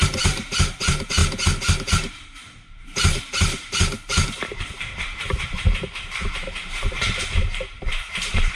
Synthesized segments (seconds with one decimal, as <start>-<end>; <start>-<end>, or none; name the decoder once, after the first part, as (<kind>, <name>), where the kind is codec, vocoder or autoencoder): 0.0-1.2 (vocoder, BigVGAN v2); 1.9-8.6